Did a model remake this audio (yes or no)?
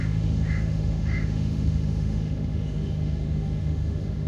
yes